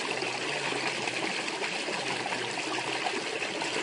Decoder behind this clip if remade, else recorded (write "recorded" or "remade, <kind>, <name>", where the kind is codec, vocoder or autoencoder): recorded